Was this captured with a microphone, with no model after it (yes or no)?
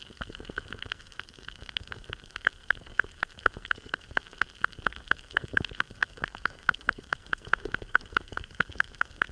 no